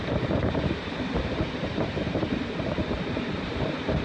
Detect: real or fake fake